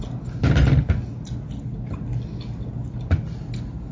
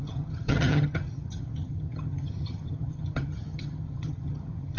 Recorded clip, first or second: first